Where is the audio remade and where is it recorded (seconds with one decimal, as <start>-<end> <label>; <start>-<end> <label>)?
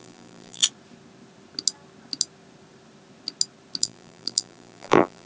0.0-0.6 remade; 0.6-3.8 recorded; 3.8-5.3 remade